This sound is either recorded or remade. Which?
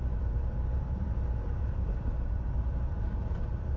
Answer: remade